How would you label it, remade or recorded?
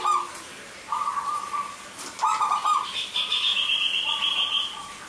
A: recorded